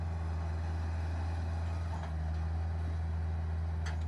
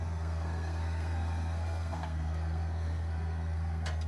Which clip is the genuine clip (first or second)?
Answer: first